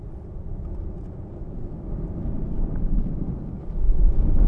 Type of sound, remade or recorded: recorded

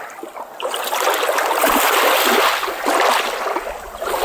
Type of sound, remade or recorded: recorded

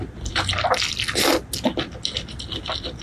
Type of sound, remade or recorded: recorded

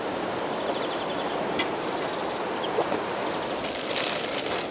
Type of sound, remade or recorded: recorded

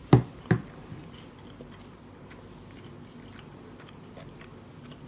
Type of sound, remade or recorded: recorded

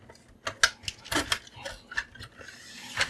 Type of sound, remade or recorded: recorded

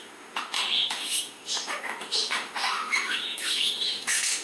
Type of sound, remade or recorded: remade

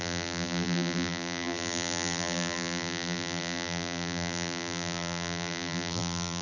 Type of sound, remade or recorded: remade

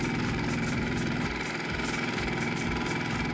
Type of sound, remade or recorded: remade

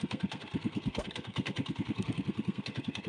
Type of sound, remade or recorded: remade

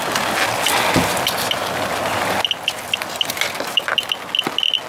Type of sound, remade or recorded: recorded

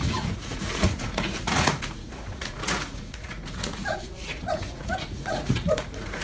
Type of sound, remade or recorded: remade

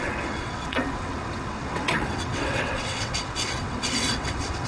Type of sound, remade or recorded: remade